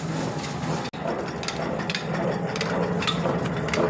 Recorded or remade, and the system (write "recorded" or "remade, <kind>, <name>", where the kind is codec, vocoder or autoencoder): recorded